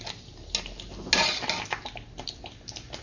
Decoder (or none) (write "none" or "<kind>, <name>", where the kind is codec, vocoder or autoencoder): none